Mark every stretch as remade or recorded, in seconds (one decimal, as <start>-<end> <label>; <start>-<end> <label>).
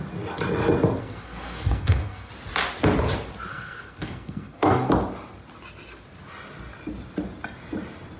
0.0-1.0 recorded; 1.0-2.3 remade; 2.3-3.5 recorded; 3.5-4.9 remade; 4.9-8.2 recorded